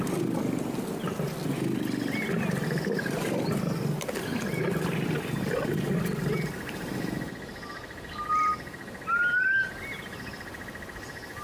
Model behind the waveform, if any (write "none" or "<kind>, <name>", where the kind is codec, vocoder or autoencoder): none